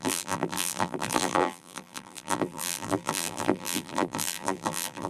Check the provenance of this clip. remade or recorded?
remade